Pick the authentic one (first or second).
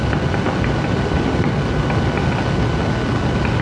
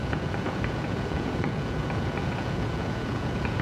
first